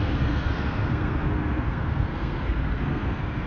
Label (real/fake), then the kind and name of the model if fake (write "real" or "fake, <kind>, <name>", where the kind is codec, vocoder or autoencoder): fake, codec, SNAC